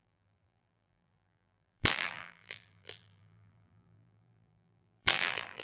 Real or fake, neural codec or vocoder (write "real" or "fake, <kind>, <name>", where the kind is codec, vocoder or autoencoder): fake, vocoder, BigVGAN v2